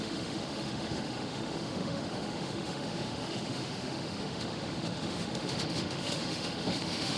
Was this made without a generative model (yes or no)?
no